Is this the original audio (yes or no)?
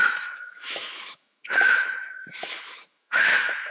no